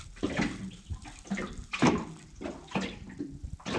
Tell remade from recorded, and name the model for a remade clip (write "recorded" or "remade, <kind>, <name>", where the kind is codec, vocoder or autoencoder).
recorded